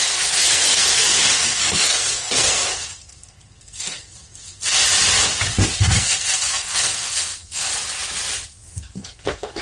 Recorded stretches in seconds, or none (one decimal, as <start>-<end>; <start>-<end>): 4.8-5.8; 7.7-8.5

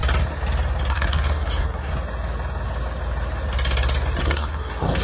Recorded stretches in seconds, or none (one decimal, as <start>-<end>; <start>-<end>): 0.0-0.9; 1.9-4.2

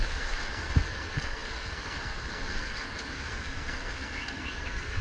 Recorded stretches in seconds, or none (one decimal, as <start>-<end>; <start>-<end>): none